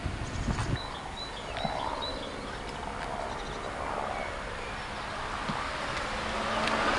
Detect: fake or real real